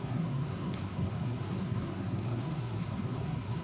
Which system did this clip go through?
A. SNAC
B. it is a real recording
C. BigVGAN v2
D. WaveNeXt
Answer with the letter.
A